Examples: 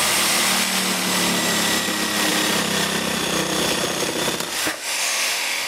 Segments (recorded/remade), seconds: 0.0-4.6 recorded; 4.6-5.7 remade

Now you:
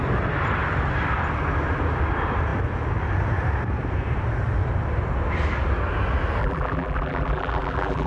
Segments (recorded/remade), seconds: 0.0-6.4 recorded; 6.4-8.1 remade

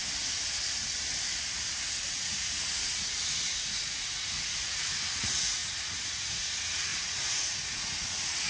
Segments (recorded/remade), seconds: 0.0-2.0 recorded; 2.0-8.5 remade

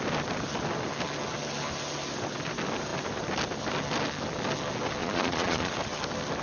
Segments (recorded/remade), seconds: 0.0-5.0 recorded; 5.0-5.7 remade; 5.7-6.4 recorded

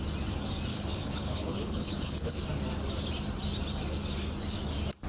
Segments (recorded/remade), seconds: 0.0-0.7 recorded; 0.7-2.4 remade; 2.4-5.1 recorded